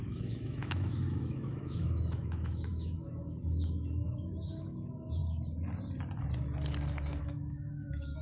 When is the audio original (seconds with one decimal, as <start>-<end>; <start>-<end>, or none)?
5.2-7.2